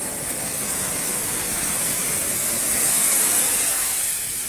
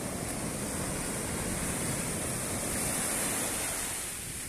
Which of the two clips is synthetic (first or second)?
first